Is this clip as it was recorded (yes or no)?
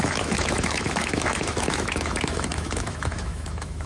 no